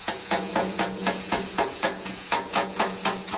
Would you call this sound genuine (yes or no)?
no